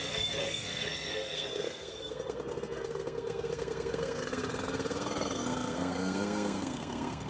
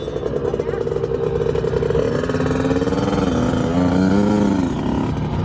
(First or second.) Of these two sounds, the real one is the second